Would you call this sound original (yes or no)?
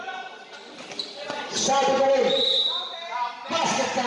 yes